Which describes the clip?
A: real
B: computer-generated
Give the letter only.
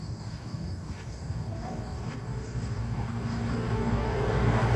B